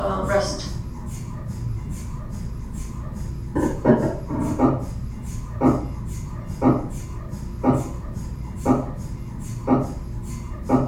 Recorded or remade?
recorded